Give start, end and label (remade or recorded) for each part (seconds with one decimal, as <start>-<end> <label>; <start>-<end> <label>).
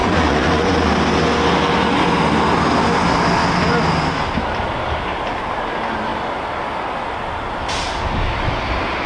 0.0-0.9 remade; 0.9-9.1 recorded